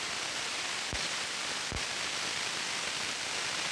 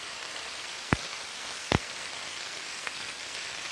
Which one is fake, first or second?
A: second